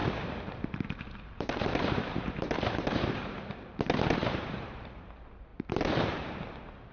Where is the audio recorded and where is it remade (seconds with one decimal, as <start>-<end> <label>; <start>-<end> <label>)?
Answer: 0.0-3.8 remade; 3.8-4.2 recorded; 4.2-5.1 remade; 5.1-5.5 recorded; 5.5-6.2 remade; 6.2-6.9 recorded